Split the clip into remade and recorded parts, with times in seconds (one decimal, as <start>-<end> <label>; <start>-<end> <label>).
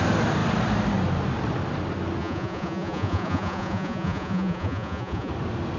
0.0-2.2 recorded; 2.2-5.3 remade; 5.3-5.8 recorded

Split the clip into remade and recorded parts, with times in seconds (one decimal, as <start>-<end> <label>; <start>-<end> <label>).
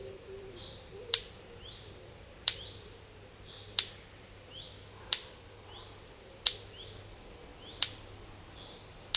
0.0-3.3 remade; 3.3-7.5 recorded; 7.5-8.4 remade; 8.4-9.2 recorded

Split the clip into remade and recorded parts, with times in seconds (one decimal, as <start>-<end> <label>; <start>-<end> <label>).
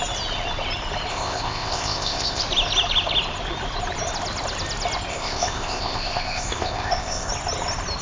0.0-1.1 recorded; 1.1-2.4 remade; 2.4-5.1 recorded; 5.1-7.3 remade; 7.3-8.0 recorded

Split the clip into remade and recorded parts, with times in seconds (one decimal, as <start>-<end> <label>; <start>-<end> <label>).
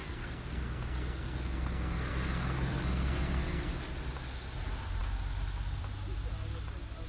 0.0-3.7 remade; 3.7-7.1 recorded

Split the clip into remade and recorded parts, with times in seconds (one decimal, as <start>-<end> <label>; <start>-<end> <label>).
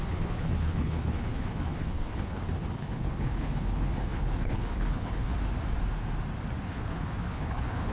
0.0-5.3 remade; 5.3-6.6 recorded; 6.6-7.9 remade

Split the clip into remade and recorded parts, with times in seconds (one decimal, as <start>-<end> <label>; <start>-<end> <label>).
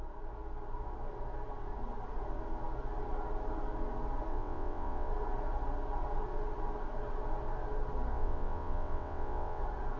0.0-4.3 recorded; 4.3-5.1 remade; 5.1-8.1 recorded; 8.1-9.6 remade; 9.6-10.0 recorded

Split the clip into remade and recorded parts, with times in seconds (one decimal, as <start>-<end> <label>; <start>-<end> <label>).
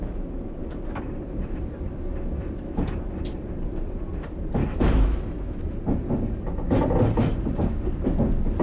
0.0-4.6 recorded; 4.6-5.6 remade; 5.6-8.6 recorded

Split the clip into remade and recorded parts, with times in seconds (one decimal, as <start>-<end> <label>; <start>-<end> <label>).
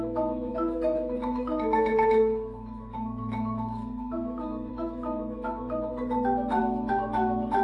0.0-5.9 remade; 5.9-6.6 recorded; 6.6-7.6 remade